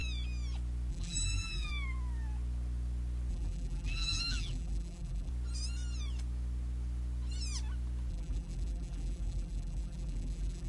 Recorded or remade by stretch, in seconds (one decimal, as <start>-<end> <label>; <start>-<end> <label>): 0.0-0.9 recorded; 0.9-1.7 remade; 1.7-3.3 recorded; 3.3-5.3 remade; 5.3-8.1 recorded; 8.1-10.7 remade